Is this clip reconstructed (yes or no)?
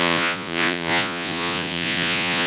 yes